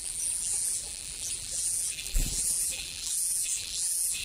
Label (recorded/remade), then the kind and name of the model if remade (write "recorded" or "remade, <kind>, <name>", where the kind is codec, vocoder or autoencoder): remade, vocoder, BigVGAN v2